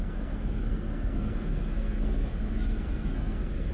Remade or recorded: remade